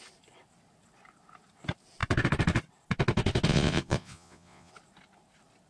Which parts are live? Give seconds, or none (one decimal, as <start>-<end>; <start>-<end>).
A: 0.0-3.5; 4.7-5.7